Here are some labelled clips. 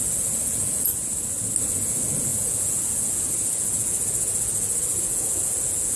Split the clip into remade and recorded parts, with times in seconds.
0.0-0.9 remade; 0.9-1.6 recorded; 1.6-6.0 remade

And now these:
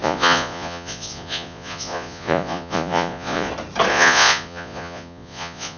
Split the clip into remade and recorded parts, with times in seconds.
0.0-3.5 remade; 3.5-3.9 recorded; 3.9-5.8 remade

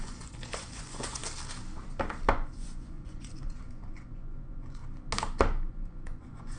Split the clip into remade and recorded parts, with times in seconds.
0.0-1.2 remade; 1.2-2.3 recorded; 2.3-4.8 remade; 4.8-5.7 recorded; 5.7-6.6 remade

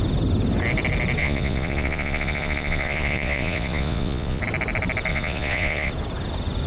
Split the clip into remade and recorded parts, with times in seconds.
0.0-1.2 recorded; 1.2-4.4 remade; 4.4-5.1 recorded; 5.1-5.9 remade; 5.9-6.7 recorded

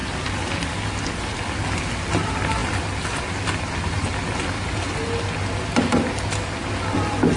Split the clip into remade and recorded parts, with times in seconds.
0.0-7.4 recorded

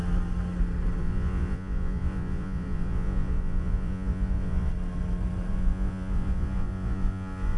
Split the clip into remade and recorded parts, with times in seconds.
0.0-1.0 recorded; 1.0-4.7 remade; 4.7-5.5 recorded; 5.5-7.6 remade

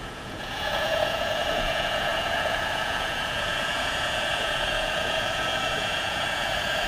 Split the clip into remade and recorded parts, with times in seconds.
0.0-6.9 remade